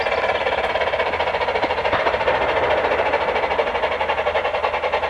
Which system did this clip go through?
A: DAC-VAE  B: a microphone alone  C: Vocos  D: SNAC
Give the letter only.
B